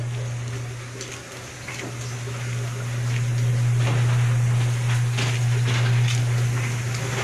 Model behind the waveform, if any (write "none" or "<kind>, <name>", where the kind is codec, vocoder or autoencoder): none